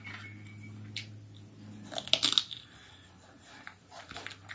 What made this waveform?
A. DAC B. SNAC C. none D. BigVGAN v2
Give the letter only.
C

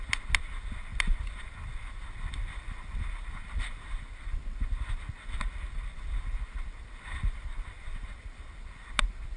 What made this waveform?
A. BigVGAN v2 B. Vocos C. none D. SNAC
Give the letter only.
C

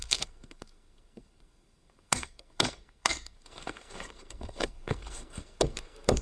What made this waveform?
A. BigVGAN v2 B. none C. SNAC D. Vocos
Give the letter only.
C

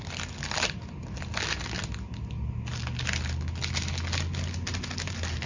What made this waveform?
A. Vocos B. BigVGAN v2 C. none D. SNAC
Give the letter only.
C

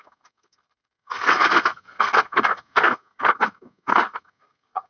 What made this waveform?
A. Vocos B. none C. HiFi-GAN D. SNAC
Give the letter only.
D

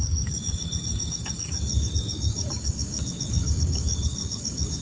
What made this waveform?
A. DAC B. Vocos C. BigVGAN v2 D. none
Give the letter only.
A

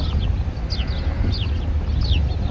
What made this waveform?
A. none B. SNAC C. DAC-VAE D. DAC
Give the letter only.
A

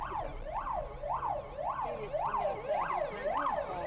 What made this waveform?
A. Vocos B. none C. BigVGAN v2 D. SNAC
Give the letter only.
B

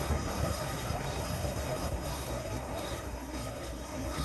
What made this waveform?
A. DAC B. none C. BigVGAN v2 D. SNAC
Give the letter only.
D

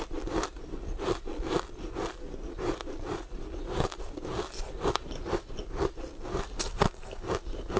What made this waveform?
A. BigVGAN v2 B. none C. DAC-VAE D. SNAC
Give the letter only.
B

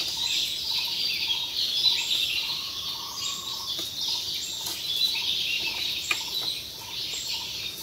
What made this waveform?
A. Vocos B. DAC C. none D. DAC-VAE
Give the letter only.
C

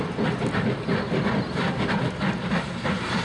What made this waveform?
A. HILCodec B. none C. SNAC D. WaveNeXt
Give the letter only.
B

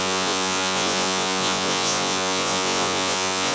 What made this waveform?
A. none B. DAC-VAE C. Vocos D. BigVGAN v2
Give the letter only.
C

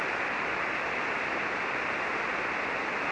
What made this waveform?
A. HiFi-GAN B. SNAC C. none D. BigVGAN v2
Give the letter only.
C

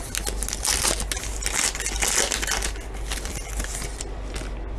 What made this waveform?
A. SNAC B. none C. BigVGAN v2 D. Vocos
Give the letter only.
B